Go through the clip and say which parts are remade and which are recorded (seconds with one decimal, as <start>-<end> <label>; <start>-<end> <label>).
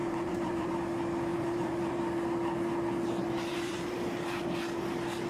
0.0-0.7 remade; 0.7-1.3 recorded; 1.3-2.0 remade; 2.0-3.5 recorded; 3.5-4.4 remade; 4.4-5.3 recorded